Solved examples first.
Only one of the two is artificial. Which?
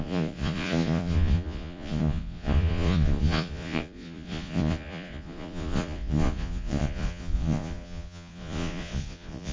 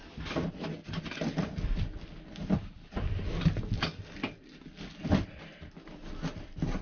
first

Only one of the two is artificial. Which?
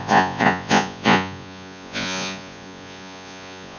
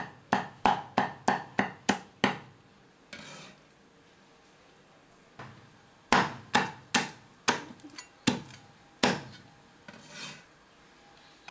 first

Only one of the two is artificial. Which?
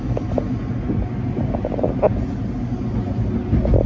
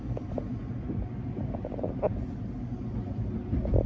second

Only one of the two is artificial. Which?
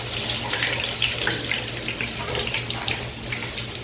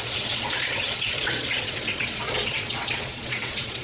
second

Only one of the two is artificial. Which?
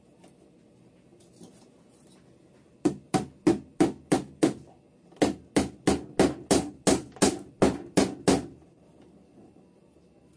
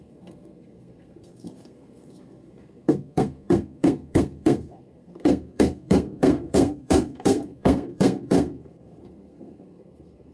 second